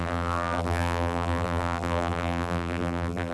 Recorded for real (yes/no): no